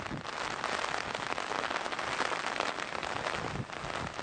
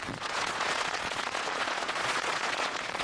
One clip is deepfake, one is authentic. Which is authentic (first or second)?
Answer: first